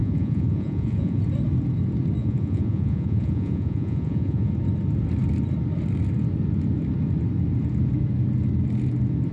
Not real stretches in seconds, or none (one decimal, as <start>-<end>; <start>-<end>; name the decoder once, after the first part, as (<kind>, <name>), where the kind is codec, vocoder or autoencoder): 0.0-1.2 (vocoder, Vocos); 2.2-4.5